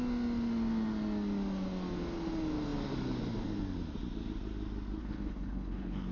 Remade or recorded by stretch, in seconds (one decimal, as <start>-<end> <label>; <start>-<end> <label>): 0.0-5.0 recorded; 5.0-6.1 remade